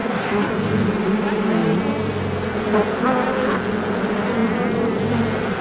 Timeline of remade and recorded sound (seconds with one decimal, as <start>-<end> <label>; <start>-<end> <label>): 0.0-0.5 remade; 0.5-5.6 recorded